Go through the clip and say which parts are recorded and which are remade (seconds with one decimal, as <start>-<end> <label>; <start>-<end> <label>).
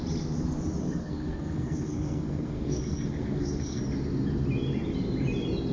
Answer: 0.0-0.8 recorded; 0.8-3.8 remade; 3.8-5.7 recorded